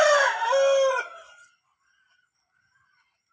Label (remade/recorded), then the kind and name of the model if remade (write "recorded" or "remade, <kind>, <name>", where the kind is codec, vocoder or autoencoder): recorded